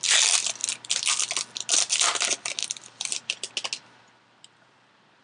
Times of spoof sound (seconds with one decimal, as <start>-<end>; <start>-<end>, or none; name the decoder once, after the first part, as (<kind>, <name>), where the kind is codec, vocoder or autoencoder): 2.6-3.5 (vocoder, BigVGAN v2)